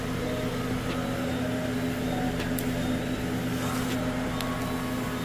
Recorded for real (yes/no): yes